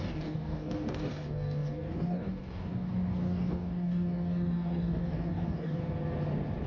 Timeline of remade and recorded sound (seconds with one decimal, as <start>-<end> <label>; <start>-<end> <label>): 0.0-5.8 remade; 5.8-6.7 recorded